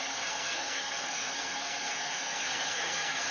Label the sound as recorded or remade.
remade